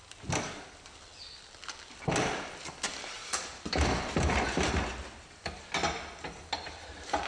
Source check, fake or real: real